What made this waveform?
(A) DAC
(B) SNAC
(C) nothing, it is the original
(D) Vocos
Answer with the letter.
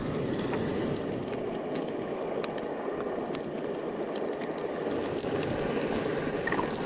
C